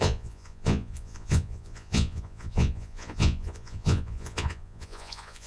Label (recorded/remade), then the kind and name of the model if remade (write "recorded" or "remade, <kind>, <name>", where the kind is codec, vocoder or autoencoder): remade, vocoder, Vocos